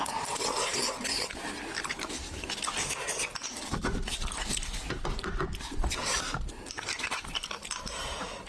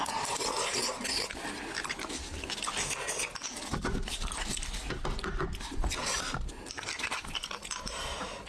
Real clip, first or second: second